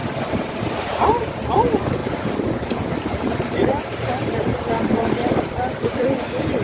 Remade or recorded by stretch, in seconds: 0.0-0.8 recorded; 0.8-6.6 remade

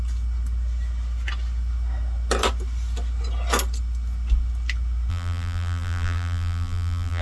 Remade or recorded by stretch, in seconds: 0.0-5.1 recorded; 5.1-7.2 remade